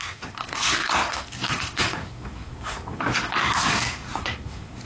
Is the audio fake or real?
fake